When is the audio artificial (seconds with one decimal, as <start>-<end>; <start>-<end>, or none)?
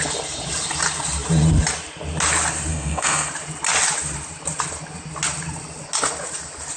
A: 2.7-3.3